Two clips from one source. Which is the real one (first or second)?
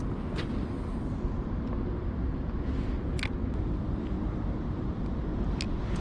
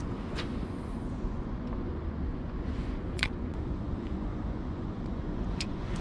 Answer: first